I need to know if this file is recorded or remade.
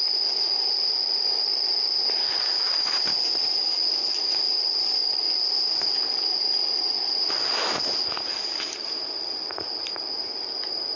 remade